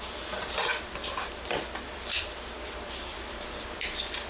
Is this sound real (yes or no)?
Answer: no